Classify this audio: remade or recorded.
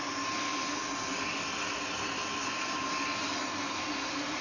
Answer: recorded